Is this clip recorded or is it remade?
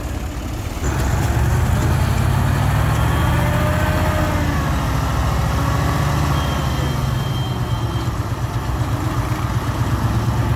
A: recorded